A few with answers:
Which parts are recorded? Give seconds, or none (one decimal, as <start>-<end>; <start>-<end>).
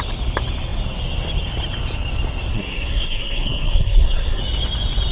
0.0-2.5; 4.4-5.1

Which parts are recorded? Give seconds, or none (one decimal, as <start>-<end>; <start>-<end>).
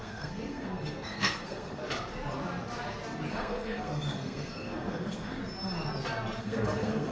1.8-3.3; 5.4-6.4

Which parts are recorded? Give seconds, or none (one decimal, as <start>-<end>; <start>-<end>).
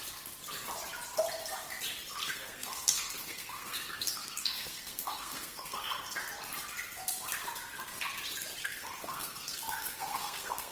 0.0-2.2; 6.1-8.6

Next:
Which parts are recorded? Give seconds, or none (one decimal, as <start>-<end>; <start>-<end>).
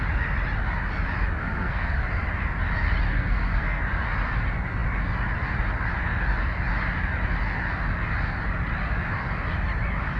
0.0-1.4; 2.0-3.1; 3.8-10.2